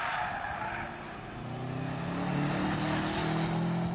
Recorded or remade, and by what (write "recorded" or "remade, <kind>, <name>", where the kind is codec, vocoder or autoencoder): recorded